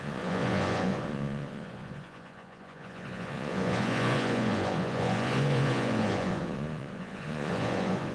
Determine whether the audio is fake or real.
fake